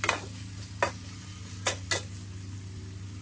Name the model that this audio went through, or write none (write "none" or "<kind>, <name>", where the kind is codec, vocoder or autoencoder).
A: none